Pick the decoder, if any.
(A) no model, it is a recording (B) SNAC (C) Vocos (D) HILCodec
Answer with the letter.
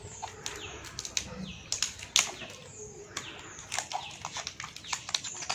A